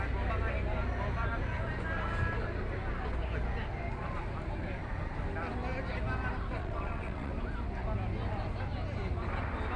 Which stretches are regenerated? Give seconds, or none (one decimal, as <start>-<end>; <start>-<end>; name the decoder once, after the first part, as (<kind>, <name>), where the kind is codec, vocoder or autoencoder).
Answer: 6.6-7.3 (vocoder, WaveNeXt)